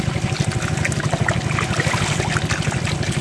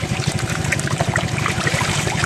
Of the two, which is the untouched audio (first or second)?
first